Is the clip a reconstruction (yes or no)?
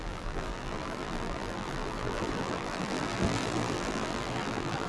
yes